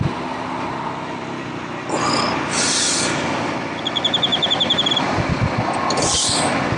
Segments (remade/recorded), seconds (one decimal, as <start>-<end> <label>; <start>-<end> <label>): 0.0-4.3 recorded; 4.3-5.2 remade; 5.2-6.8 recorded